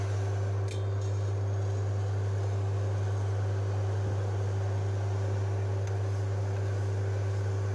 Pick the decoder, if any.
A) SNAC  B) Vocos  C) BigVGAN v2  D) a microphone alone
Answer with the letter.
D